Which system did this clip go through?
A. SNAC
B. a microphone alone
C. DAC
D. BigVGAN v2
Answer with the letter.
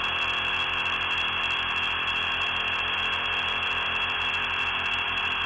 B